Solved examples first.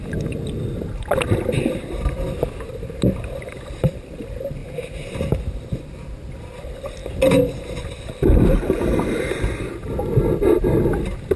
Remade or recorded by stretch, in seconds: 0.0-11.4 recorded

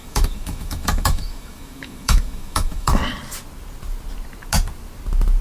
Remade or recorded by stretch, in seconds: 0.0-3.0 remade; 3.0-5.4 recorded

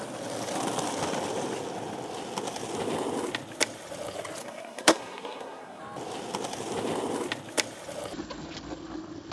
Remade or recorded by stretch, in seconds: 0.0-4.4 recorded; 4.4-5.8 remade; 5.8-9.3 recorded

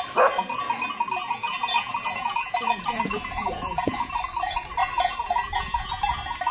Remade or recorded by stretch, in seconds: 0.0-1.4 recorded; 1.4-4.1 remade; 4.1-4.8 recorded; 4.8-5.9 remade; 5.9-6.5 recorded